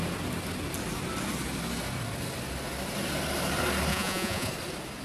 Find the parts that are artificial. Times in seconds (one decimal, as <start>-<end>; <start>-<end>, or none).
3.9-4.5